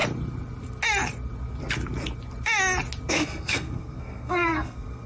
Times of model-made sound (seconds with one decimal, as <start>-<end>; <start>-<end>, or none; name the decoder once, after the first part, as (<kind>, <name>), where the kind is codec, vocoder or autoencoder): 3.1-5.1 (codec, SNAC)